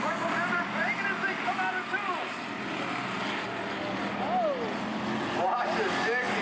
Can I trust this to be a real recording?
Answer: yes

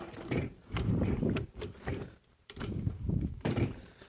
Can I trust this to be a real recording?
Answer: no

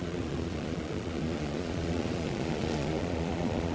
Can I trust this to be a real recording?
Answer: no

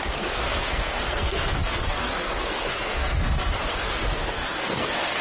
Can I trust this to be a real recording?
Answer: no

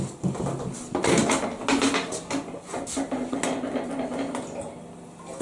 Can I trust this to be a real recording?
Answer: yes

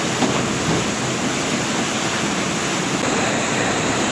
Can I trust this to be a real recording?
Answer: yes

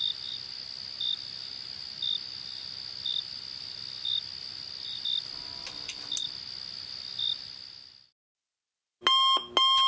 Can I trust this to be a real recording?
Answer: yes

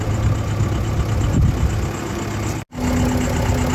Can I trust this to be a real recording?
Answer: yes